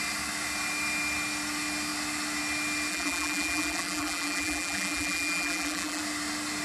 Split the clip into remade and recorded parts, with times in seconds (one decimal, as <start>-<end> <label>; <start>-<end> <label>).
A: 0.0-2.9 recorded; 2.9-6.0 remade; 6.0-6.6 recorded